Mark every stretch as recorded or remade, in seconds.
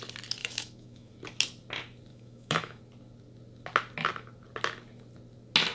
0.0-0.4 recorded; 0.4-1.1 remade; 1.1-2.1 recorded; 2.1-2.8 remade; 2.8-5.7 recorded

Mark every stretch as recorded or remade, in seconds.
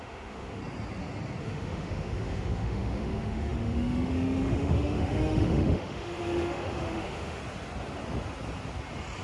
0.0-0.6 remade; 0.6-1.4 recorded; 1.4-7.4 remade; 7.4-9.2 recorded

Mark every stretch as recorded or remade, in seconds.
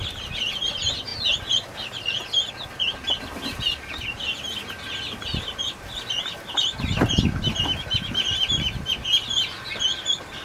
0.0-10.4 recorded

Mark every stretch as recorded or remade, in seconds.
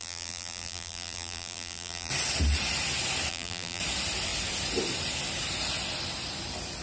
0.0-2.1 remade; 2.1-3.3 recorded; 3.3-3.8 remade; 3.8-6.8 recorded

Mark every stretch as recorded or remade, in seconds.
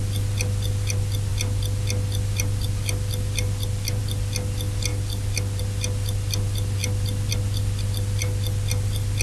0.0-9.2 recorded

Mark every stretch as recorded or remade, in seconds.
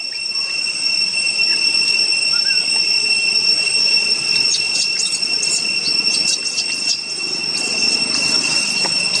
0.0-1.5 recorded; 1.5-2.0 remade; 2.0-4.0 recorded; 4.0-6.3 remade; 6.3-7.4 recorded; 7.4-8.0 remade; 8.0-9.2 recorded